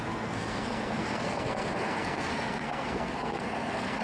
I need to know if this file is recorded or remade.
remade